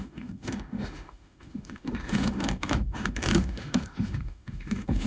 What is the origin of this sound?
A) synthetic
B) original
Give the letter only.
A